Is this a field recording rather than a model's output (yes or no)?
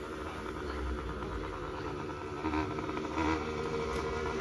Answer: yes